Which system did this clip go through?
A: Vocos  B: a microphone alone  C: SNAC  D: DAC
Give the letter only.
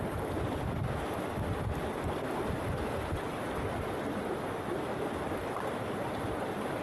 B